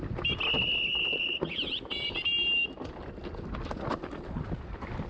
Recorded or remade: recorded